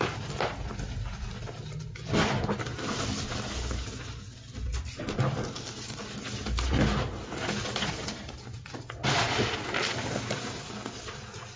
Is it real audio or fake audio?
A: real